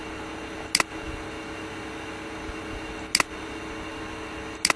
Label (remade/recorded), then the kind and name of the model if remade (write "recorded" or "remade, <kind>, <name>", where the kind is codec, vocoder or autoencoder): recorded